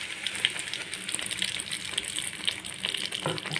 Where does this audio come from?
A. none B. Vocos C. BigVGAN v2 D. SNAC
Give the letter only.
A